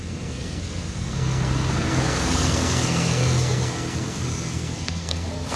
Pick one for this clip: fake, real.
fake